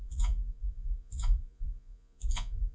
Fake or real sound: fake